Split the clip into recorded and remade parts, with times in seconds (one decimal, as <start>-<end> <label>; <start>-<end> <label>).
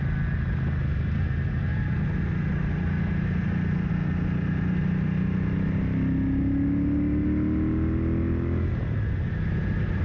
0.0-10.0 recorded